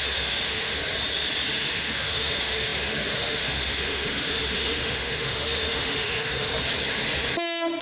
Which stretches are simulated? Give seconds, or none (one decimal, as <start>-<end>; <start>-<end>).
0.0-0.8; 1.7-6.5